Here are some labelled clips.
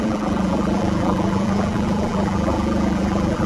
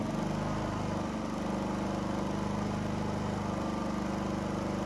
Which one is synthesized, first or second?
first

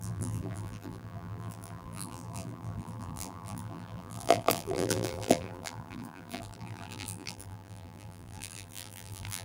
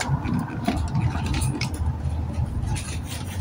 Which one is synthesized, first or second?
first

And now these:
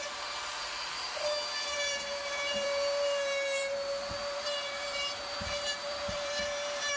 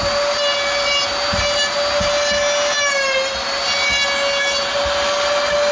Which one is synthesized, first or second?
first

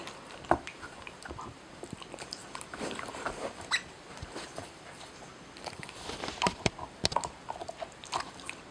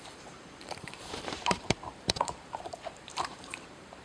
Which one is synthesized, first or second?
second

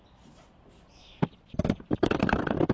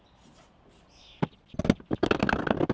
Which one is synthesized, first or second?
first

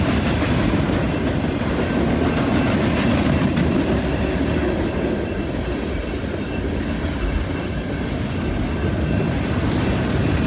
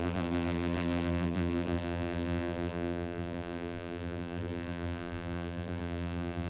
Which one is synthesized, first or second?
second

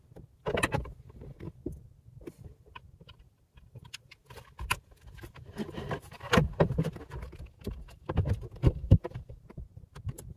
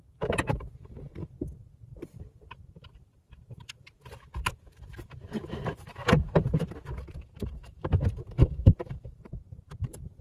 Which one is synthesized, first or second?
second